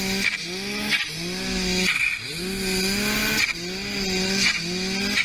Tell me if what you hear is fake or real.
real